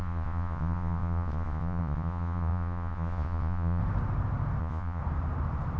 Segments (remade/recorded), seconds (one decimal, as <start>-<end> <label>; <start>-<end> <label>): 0.0-3.8 remade; 3.8-4.6 recorded; 4.6-5.0 remade; 5.0-5.8 recorded